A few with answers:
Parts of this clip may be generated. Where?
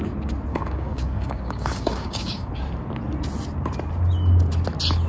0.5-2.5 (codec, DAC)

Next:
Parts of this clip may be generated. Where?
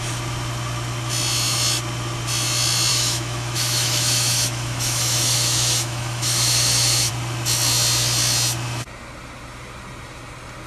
2.9-7.1 (autoencoder, DAC-VAE)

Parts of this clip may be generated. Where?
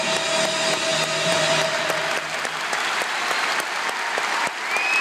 none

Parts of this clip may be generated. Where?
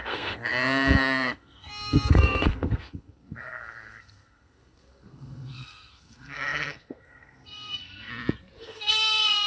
0.0-8.1 (codec, SNAC); 8.6-9.5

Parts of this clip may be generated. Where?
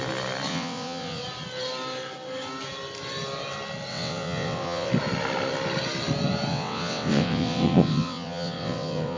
0.5-1.2 (vocoder, WaveNeXt); 3.9-4.9; 6.5-9.2